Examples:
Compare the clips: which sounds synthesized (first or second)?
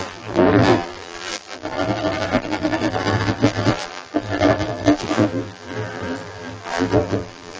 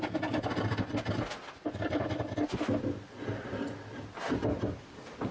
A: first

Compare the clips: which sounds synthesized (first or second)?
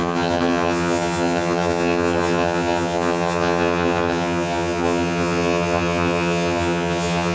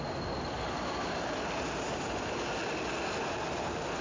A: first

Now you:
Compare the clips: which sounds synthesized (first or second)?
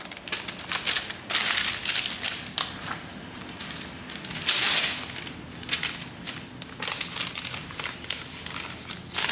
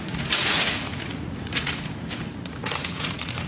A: second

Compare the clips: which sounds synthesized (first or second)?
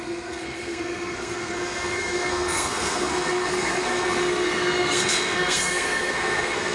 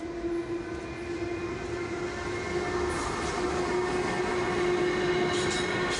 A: first